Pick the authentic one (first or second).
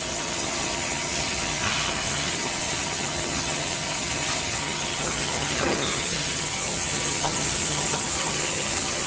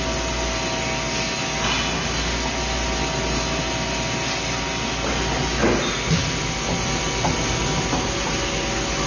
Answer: second